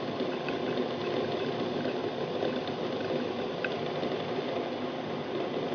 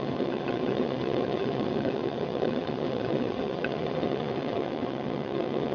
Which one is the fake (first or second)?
second